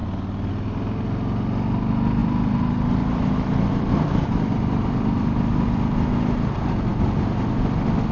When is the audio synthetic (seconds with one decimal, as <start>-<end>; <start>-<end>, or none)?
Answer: 0.0-0.5; 2.2-6.1